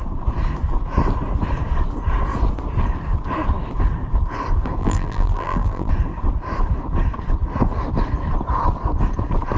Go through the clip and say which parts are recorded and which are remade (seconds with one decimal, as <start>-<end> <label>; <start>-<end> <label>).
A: 0.0-4.8 recorded; 4.8-5.9 remade; 5.9-9.6 recorded